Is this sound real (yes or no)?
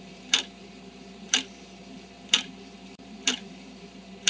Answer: no